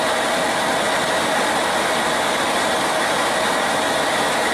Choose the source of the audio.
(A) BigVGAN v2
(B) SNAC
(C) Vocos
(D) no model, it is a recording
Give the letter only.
D